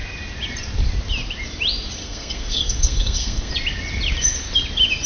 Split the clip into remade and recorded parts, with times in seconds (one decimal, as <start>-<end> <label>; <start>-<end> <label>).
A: 0.0-2.0 recorded; 2.0-3.5 remade; 3.5-5.1 recorded